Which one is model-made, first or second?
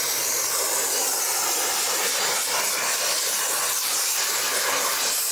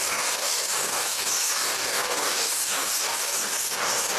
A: second